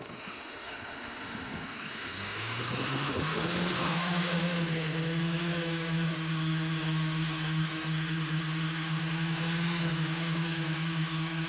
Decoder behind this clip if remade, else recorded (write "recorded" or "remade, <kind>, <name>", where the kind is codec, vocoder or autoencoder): remade, autoencoder, DAC-VAE